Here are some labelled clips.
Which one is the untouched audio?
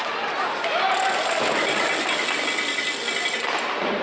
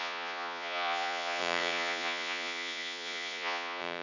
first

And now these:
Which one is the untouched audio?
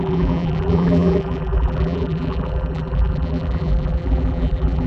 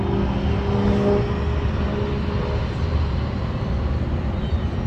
second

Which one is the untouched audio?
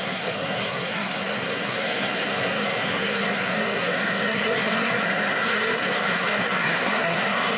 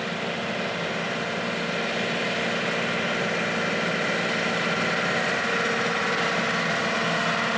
second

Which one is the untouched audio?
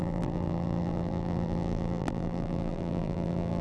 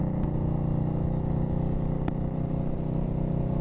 second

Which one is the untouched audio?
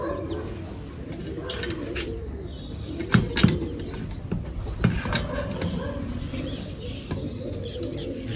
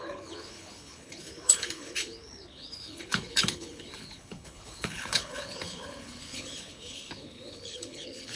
first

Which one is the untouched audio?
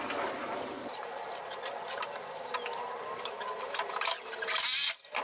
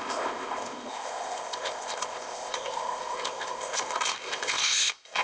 first